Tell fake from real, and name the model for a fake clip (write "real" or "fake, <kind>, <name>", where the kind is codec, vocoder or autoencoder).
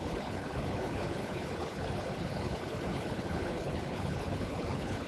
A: fake, codec, HILCodec